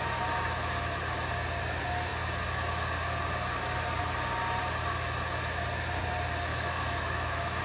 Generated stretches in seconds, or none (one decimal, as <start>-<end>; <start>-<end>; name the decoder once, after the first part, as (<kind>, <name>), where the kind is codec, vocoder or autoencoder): 6.5-7.6 (autoencoder, DAC-VAE)